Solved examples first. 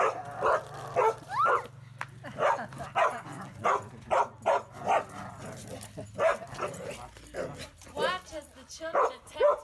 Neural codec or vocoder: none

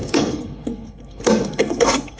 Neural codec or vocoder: codec, SNAC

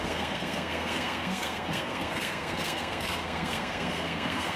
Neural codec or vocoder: codec, SNAC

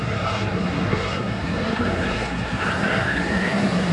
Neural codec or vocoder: codec, SNAC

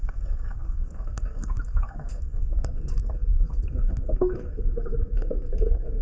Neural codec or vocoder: codec, SNAC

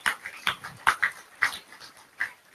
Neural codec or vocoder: vocoder, BigVGAN v2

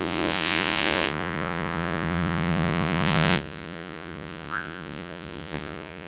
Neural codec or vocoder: vocoder, Vocos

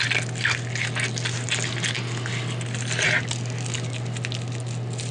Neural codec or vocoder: none